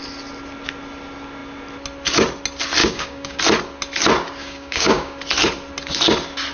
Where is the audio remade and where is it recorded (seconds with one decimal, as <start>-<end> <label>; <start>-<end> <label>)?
0.0-2.8 recorded; 2.8-3.4 remade; 3.4-4.4 recorded; 4.4-5.2 remade; 5.2-6.5 recorded